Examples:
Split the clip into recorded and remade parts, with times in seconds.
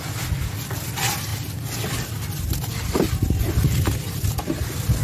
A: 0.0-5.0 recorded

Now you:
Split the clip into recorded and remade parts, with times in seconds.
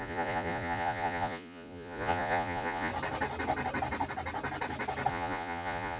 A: 0.0-2.9 remade; 2.9-5.1 recorded; 5.1-6.0 remade